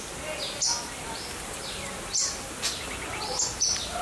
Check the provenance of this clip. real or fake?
real